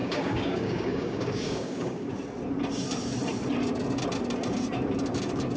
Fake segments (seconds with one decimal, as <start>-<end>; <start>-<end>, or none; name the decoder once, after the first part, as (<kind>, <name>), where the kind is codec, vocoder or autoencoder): 0.0-2.1 (codec, DAC)

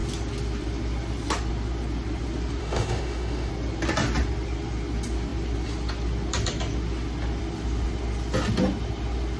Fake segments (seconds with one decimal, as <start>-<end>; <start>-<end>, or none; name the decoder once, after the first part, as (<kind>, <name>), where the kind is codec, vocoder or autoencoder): 2.6-3.5 (autoencoder, DAC-VAE)

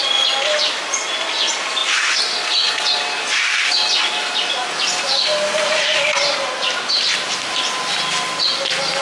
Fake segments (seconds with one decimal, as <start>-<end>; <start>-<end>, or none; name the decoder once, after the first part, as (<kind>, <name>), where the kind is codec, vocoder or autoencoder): none

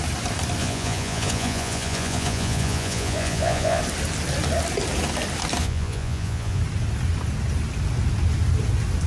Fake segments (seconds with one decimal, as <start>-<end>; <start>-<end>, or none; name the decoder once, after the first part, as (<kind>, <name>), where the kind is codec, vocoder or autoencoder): 0.6-3.8 (vocoder, Vocos); 5.6-6.6

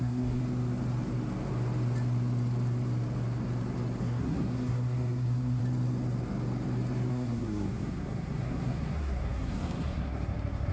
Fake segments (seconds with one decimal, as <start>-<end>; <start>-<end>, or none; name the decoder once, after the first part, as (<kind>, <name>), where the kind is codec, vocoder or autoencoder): 0.0-0.4 (codec, SNAC); 4.0-5.6; 7.1-10.7

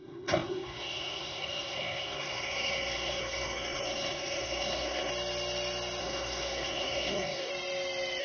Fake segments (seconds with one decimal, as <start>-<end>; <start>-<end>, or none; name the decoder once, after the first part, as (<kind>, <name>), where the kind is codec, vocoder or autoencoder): 0.0-5.1 (codec, SNAC); 6.0-7.5